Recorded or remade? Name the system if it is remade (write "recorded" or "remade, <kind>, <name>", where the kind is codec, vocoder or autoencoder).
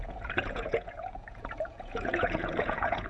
remade, vocoder, Vocos